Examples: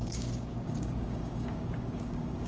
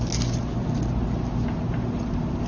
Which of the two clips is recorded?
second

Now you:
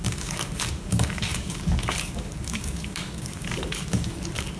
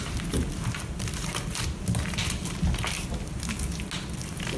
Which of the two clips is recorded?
second